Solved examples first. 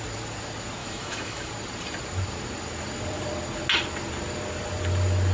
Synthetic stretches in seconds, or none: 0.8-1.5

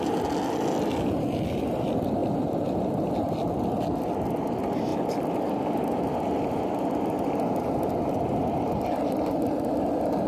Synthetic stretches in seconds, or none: none

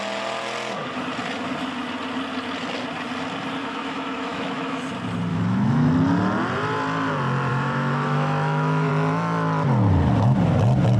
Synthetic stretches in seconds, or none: 3.6-4.8; 5.3-5.9; 7.5-8.9

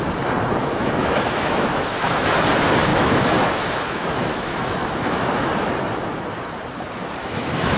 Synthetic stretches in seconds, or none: 0.6-2.3; 2.9-5.7; 7.2-7.8